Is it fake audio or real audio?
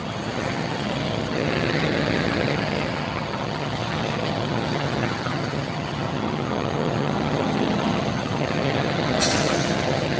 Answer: fake